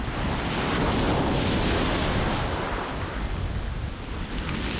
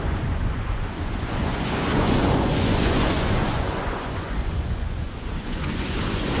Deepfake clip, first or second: second